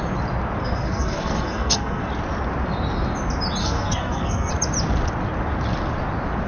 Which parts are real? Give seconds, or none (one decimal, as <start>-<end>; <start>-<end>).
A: 0.0-0.6; 2.1-3.6; 4.5-6.5